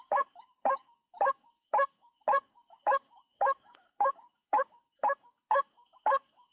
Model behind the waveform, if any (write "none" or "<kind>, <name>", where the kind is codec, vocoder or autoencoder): codec, DAC